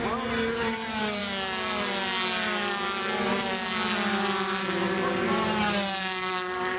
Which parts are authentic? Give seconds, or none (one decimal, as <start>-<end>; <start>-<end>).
0.0-6.8